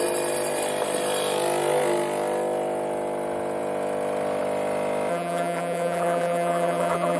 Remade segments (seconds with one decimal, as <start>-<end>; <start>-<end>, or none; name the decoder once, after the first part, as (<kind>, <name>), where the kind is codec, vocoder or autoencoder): 5.1-7.2 (vocoder, BigVGAN v2)